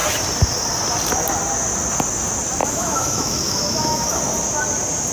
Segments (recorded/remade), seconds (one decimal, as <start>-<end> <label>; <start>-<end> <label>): 0.0-2.6 recorded; 2.6-4.2 remade; 4.2-5.1 recorded